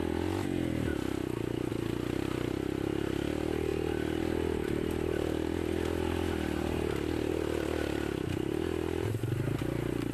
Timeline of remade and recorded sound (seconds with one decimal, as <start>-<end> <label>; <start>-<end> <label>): 0.0-10.1 recorded